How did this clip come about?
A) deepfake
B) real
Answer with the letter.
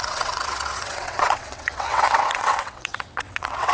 A